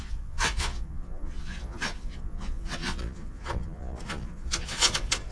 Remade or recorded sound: remade